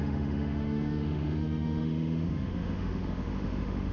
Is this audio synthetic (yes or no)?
yes